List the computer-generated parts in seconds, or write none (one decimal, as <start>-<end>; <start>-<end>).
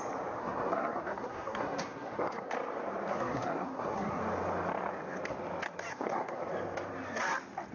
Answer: 0.4-2.5; 3.1-4.2; 5.9-6.4